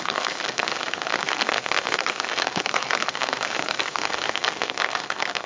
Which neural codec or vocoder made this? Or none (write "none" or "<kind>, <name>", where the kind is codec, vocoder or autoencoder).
codec, SNAC